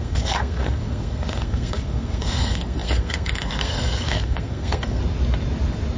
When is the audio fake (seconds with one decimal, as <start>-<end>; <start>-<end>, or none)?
0.0-5.0